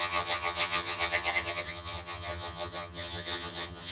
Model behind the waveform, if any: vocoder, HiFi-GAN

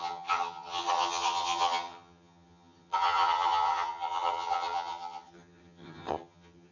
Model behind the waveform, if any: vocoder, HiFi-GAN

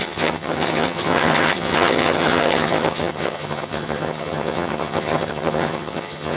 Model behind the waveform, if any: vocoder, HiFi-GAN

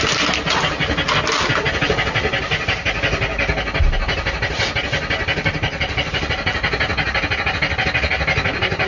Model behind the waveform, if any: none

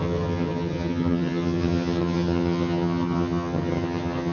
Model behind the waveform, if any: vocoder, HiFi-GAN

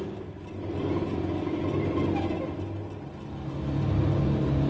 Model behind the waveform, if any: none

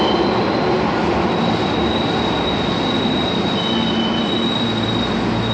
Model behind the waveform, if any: none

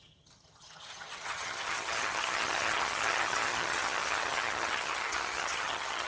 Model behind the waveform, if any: vocoder, HiFi-GAN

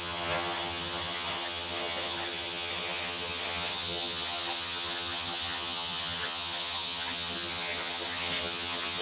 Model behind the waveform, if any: vocoder, HiFi-GAN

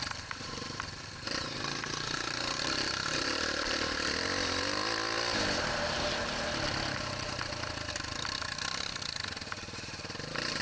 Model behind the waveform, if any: none